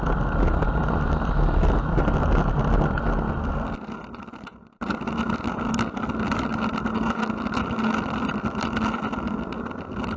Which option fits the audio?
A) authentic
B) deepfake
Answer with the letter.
A